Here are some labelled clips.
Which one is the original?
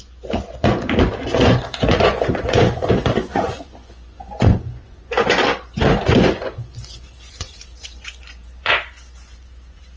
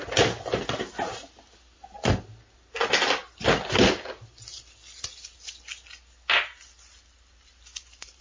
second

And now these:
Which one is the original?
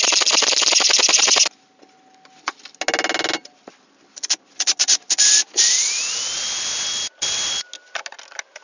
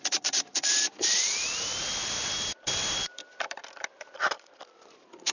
first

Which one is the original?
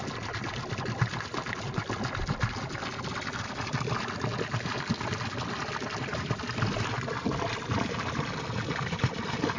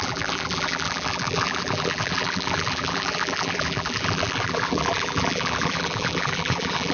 first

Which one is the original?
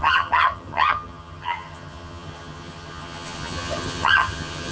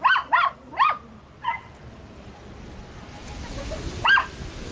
second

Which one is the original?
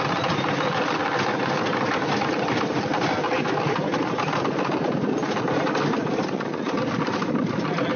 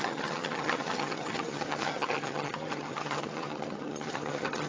first